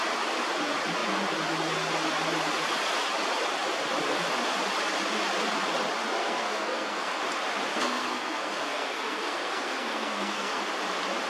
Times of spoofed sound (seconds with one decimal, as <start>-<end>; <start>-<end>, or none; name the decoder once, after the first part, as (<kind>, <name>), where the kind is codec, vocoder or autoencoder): 6.2-7.2 (codec, SNAC); 7.7-10.6